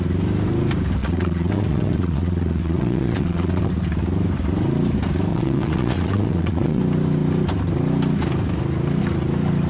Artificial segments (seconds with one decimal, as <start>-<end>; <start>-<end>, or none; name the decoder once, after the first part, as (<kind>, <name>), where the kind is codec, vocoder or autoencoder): 1.0-3.7 (vocoder, WaveNeXt); 5.3-6.8